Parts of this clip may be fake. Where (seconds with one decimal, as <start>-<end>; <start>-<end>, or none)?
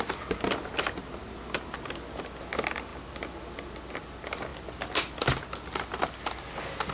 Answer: none